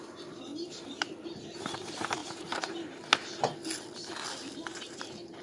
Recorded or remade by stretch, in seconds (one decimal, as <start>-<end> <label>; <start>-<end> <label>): 0.0-0.5 recorded; 0.5-1.1 remade; 1.1-2.2 recorded; 2.2-3.0 remade; 3.0-4.7 recorded; 4.7-5.4 remade